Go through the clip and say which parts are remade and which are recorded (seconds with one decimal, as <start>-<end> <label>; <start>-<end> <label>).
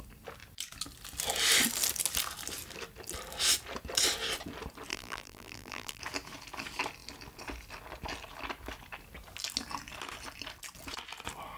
0.0-4.9 recorded; 4.9-6.0 remade; 6.0-11.6 recorded